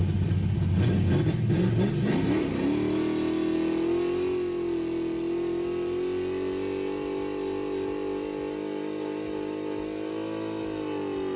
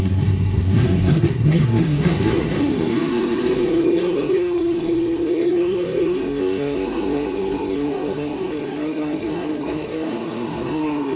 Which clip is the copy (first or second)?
second